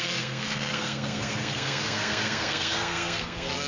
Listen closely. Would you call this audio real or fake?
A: fake